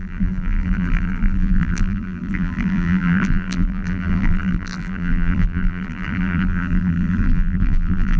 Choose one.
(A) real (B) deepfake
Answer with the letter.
B